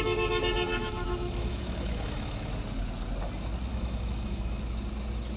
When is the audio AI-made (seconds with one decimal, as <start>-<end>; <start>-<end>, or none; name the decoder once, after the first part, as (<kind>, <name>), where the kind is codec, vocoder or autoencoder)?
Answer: 0.7-2.5 (autoencoder, DAC-VAE); 3.7-4.6